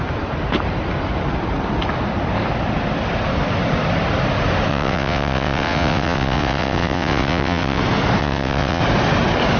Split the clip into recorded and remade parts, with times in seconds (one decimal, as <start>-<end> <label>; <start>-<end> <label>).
0.0-4.7 recorded; 4.7-7.8 remade; 7.8-8.2 recorded; 8.2-8.8 remade; 8.8-9.6 recorded